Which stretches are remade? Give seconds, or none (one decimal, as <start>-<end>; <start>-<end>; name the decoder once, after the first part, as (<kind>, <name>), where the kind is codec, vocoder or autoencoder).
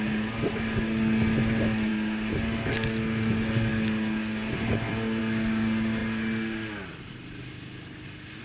none